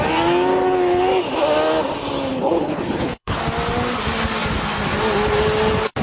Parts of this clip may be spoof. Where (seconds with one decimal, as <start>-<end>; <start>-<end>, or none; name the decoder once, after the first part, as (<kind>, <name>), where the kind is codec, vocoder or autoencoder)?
2.3-3.4 (codec, HILCodec)

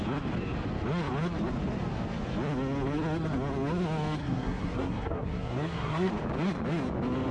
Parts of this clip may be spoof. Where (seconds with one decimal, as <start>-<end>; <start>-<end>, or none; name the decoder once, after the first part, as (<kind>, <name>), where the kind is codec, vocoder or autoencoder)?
4.2-6.1 (codec, SNAC)